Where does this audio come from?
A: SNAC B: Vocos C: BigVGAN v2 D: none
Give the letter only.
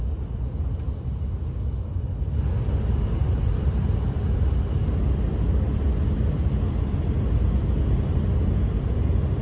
D